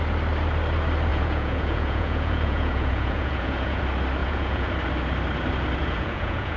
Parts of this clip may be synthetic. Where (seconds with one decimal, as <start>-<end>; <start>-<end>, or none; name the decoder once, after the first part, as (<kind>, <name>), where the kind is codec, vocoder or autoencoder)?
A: 1.1-3.8 (vocoder, Vocos); 4.2-4.7; 5.8-6.6